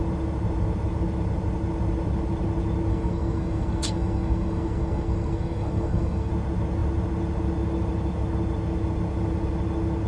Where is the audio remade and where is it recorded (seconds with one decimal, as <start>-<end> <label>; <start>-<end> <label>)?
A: 0.0-2.9 recorded; 2.9-6.3 remade; 6.3-10.1 recorded